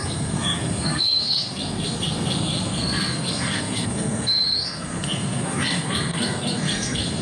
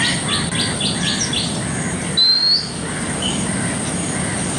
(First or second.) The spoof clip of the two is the first